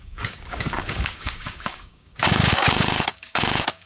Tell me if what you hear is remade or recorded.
remade